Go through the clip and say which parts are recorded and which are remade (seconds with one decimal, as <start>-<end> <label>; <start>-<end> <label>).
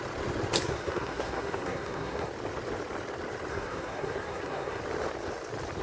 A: 0.0-0.6 recorded; 0.6-2.3 remade; 2.3-3.5 recorded; 3.5-4.8 remade; 4.8-5.8 recorded